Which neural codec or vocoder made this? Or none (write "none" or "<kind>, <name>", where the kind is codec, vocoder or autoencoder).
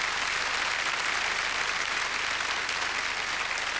none